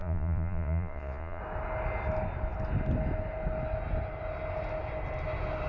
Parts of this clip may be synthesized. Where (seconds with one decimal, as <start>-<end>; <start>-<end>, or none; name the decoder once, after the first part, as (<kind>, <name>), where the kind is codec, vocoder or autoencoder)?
0.0-1.4 (vocoder, Vocos)